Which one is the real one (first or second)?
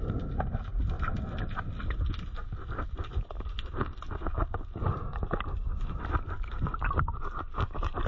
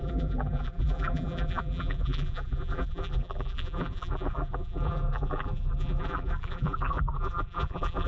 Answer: first